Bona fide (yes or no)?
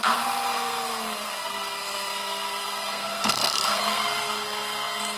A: no